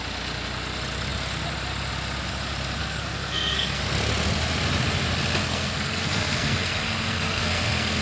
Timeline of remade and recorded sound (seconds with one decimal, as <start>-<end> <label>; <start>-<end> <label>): 0.0-2.8 recorded; 2.8-3.8 remade; 3.8-5.4 recorded; 5.4-8.0 remade

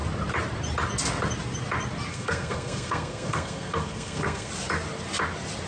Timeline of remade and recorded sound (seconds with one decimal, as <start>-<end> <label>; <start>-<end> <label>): 0.0-2.1 recorded; 2.1-4.5 remade; 4.5-5.7 recorded

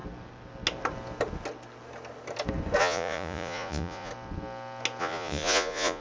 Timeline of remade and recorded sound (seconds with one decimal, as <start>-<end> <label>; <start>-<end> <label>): 0.0-2.8 recorded; 2.8-4.1 remade; 4.1-5.0 recorded; 5.0-6.0 remade

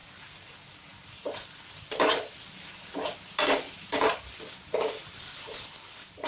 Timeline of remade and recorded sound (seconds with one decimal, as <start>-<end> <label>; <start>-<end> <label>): 0.0-6.3 recorded

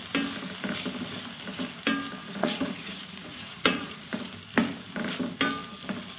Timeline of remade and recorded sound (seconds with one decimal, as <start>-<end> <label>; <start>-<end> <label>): 0.0-2.2 recorded; 2.2-4.2 remade; 4.2-6.2 recorded

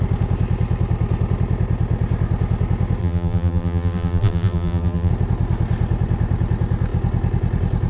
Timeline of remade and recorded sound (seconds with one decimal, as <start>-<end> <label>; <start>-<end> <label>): 0.0-3.0 recorded; 3.0-5.1 remade; 5.1-7.9 recorded

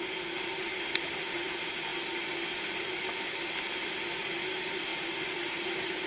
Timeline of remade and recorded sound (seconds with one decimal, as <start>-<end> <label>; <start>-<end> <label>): 0.0-4.9 recorded; 4.9-6.1 remade